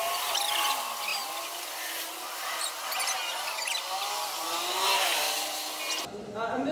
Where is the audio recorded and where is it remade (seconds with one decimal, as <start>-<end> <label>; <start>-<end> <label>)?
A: 0.0-1.1 recorded; 1.1-1.6 remade; 1.6-6.7 recorded

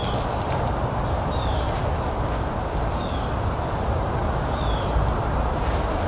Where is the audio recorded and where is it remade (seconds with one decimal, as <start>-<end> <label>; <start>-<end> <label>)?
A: 0.0-0.7 recorded; 0.7-1.8 remade; 1.8-5.5 recorded; 5.5-6.1 remade

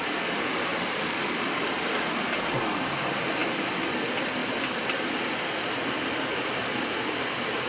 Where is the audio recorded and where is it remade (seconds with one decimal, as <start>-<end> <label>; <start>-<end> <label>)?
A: 0.0-0.7 recorded; 0.7-2.6 remade; 2.6-3.4 recorded; 3.4-4.0 remade; 4.0-4.4 recorded; 4.4-7.2 remade; 7.2-7.7 recorded

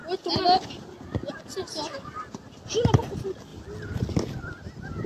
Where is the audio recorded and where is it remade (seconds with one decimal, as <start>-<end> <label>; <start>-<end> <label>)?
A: 0.0-5.1 recorded

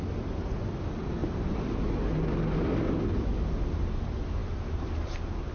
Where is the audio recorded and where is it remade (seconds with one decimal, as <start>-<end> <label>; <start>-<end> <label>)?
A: 0.0-1.2 recorded; 1.2-2.3 remade; 2.3-5.5 recorded